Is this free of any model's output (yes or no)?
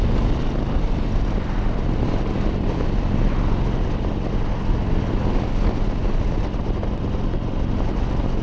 yes